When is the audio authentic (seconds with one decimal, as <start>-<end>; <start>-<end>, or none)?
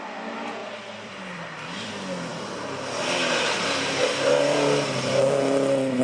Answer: 0.0-0.6; 1.9-6.0